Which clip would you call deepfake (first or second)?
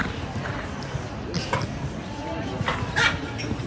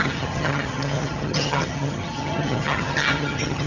second